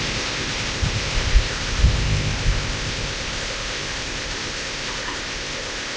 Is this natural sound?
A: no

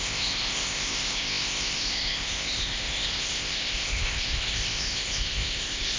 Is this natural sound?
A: no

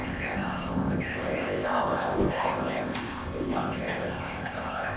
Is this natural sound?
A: no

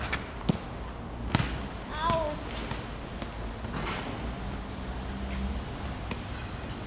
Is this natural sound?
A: yes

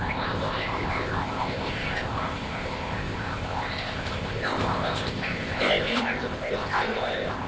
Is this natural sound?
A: no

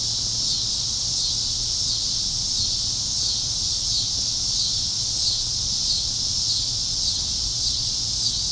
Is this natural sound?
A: yes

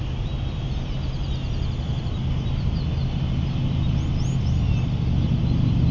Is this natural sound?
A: yes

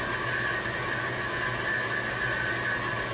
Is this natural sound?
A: yes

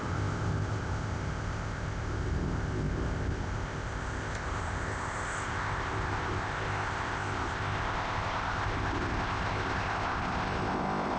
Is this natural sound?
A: no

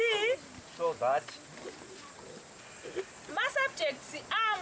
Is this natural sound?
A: yes